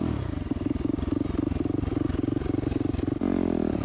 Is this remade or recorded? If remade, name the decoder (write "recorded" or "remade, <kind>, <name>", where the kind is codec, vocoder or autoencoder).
recorded